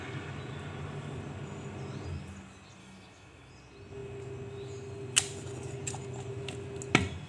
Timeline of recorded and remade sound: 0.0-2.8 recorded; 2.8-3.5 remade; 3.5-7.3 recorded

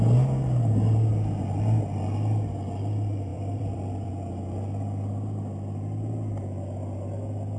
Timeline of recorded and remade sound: 0.0-3.3 recorded; 3.3-4.1 remade; 4.1-7.6 recorded

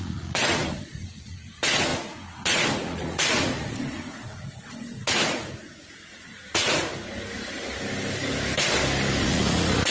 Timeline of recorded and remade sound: 0.0-6.9 remade; 6.9-9.2 recorded; 9.2-9.9 remade

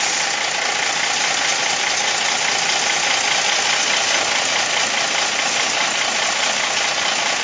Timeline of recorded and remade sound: 0.0-7.4 recorded

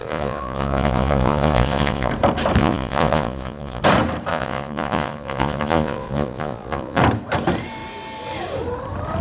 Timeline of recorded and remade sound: 0.0-2.1 remade; 2.1-2.6 recorded; 2.6-3.8 remade; 3.8-4.3 recorded; 4.3-7.0 remade; 7.0-9.2 recorded

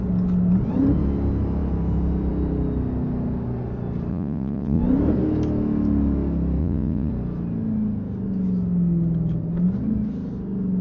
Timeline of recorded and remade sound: 0.0-4.1 recorded; 4.1-4.8 remade; 4.8-6.6 recorded; 6.6-7.1 remade; 7.1-10.8 recorded

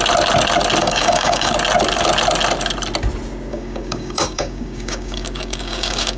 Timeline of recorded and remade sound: 0.0-0.8 recorded; 0.8-1.5 remade; 1.5-3.5 recorded; 3.5-6.2 remade